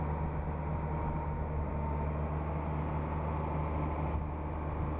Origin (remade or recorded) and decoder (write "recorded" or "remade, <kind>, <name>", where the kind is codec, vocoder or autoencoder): recorded